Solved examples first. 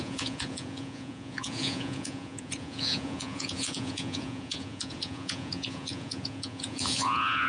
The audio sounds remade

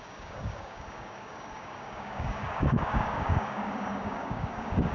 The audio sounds remade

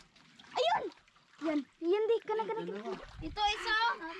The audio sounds recorded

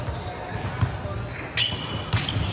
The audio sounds recorded